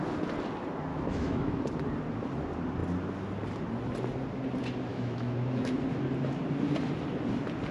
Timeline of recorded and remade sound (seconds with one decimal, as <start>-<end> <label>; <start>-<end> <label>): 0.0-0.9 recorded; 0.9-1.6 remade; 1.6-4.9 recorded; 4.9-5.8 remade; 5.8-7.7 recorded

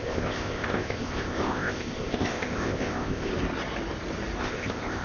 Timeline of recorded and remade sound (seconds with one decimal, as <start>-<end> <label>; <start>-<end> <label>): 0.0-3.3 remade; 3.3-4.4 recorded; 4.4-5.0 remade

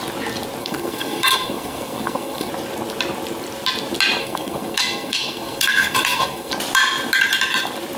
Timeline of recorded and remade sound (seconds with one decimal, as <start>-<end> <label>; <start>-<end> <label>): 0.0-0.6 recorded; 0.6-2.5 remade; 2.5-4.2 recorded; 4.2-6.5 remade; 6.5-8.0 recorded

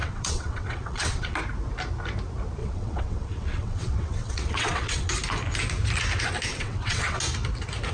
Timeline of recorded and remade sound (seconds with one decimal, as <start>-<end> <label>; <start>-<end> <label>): 0.0-1.4 remade; 1.4-2.6 recorded; 2.6-5.1 remade; 5.1-6.5 recorded; 6.5-7.2 remade; 7.2-7.9 recorded

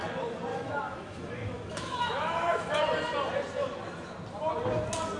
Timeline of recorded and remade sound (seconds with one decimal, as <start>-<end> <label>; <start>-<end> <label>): 0.0-0.5 recorded; 0.5-2.8 remade; 2.8-5.2 recorded

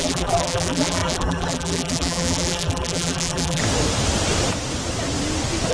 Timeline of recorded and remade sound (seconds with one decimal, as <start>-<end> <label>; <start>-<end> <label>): 0.0-3.6 remade; 3.6-5.7 recorded

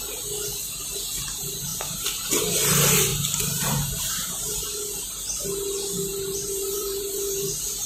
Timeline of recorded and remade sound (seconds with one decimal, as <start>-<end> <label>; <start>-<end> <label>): 0.0-1.7 recorded; 1.7-2.3 remade; 2.3-3.1 recorded; 3.1-4.8 remade; 4.8-6.1 recorded; 6.1-7.5 remade; 7.5-7.9 recorded

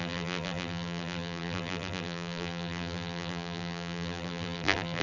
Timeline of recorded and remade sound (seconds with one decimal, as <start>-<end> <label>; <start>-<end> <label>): 0.0-5.0 remade